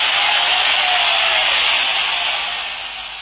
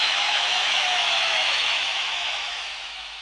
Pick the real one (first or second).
first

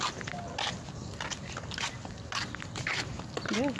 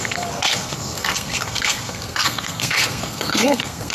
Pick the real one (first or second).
first